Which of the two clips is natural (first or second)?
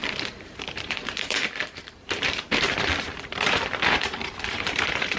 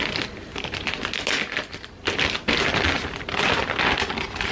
second